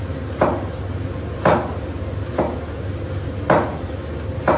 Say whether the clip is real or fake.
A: real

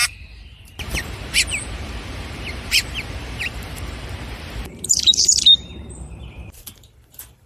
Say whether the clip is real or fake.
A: fake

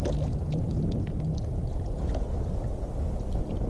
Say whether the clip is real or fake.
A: real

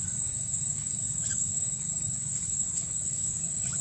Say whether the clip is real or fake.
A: fake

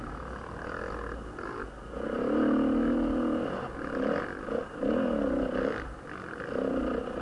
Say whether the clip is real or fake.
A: real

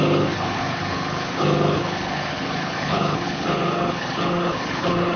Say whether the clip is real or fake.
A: fake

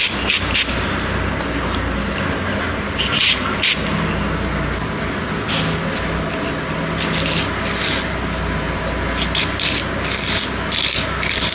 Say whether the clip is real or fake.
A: real